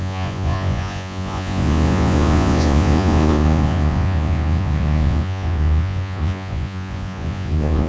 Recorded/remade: remade